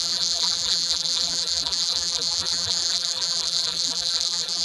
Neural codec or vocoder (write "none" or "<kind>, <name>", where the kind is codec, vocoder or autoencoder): vocoder, BigVGAN v2